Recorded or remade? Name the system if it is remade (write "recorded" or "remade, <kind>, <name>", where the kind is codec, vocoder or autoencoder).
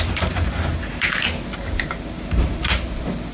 recorded